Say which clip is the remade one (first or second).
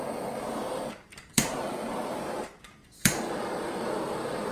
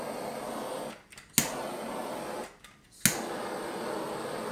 first